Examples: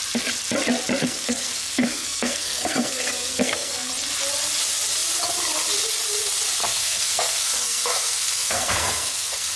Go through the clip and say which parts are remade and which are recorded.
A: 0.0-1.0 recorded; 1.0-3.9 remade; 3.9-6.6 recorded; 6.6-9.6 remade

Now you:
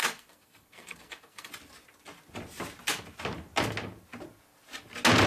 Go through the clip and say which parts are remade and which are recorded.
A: 0.0-1.5 remade; 1.5-5.3 recorded

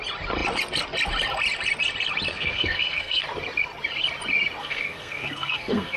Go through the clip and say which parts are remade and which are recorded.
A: 0.0-2.3 recorded; 2.3-3.2 remade; 3.2-4.6 recorded; 4.6-6.0 remade

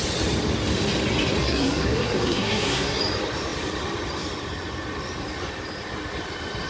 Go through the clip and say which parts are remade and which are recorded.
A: 0.0-1.4 recorded; 1.4-3.0 remade; 3.0-6.7 recorded

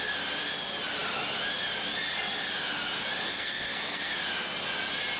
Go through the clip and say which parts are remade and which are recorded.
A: 0.0-3.3 recorded; 3.3-4.1 remade; 4.1-5.2 recorded

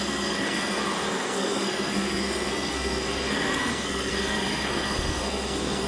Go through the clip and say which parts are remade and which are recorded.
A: 0.0-5.9 remade